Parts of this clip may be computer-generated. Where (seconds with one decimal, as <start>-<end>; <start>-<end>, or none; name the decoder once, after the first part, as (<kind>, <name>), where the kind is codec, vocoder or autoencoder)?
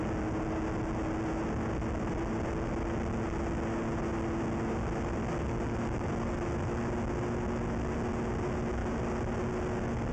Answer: none